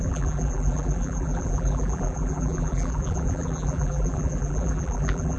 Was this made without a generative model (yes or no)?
no